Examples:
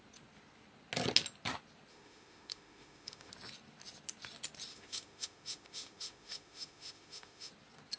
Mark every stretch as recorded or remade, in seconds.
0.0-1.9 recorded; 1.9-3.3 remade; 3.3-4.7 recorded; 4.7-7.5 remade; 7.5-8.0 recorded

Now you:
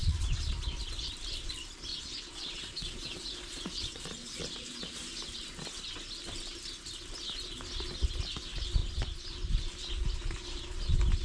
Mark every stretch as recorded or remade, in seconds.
0.0-0.8 remade; 0.8-1.9 recorded; 1.9-5.0 remade; 5.0-11.2 recorded